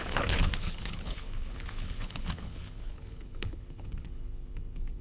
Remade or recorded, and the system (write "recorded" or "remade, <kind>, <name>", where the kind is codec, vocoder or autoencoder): remade, codec, HILCodec